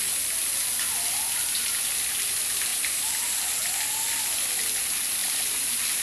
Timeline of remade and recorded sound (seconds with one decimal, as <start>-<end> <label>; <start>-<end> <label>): 0.0-2.7 recorded; 2.7-3.4 remade; 3.4-5.2 recorded; 5.2-6.0 remade